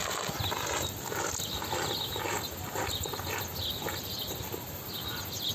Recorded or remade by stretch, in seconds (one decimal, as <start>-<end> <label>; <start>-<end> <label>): 0.0-5.5 recorded